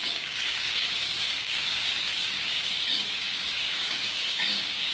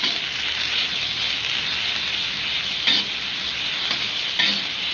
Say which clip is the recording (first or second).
second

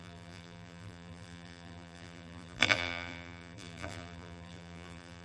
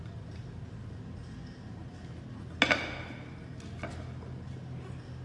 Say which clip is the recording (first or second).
second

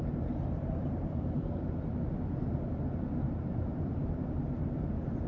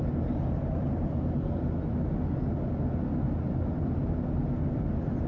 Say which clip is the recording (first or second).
second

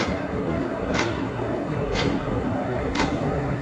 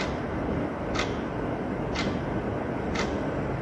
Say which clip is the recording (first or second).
second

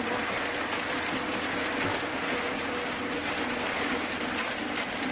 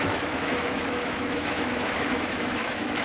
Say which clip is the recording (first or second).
first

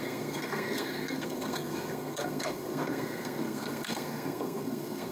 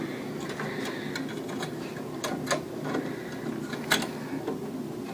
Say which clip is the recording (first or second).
second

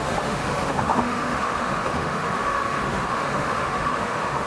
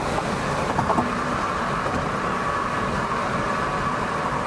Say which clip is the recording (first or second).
second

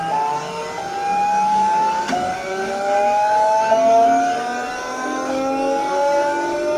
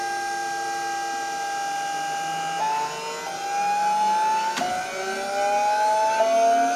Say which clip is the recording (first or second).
second